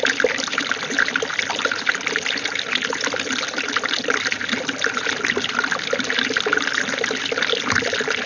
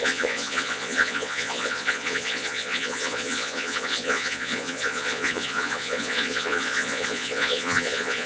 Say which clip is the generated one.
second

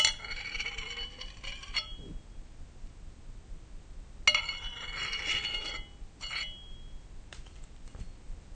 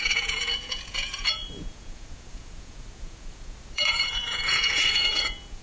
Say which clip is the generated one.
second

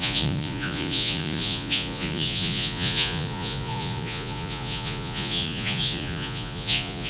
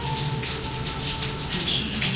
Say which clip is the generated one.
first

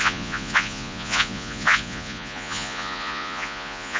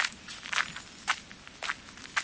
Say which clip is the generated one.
first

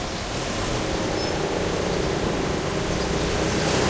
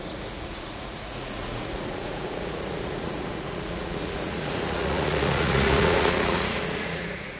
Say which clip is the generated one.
second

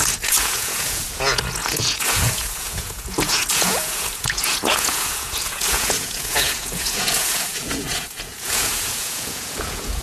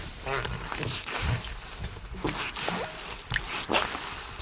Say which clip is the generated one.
first